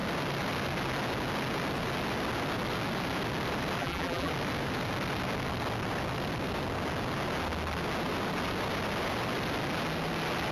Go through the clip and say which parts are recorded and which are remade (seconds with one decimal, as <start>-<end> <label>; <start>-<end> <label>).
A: 0.0-3.8 recorded; 3.8-4.3 remade; 4.3-10.5 recorded